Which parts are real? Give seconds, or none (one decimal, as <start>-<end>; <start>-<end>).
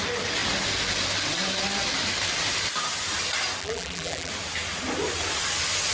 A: 0.0-3.6; 4.3-5.9